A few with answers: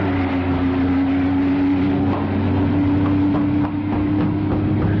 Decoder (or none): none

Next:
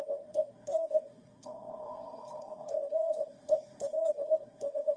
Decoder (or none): codec, SNAC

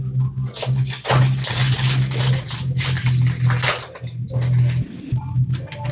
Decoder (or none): none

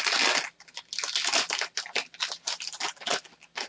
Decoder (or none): none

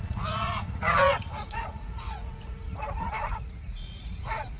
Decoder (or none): vocoder, Vocos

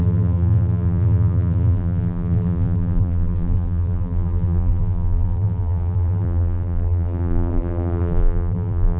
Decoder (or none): vocoder, BigVGAN v2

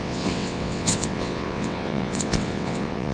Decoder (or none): vocoder, WaveNeXt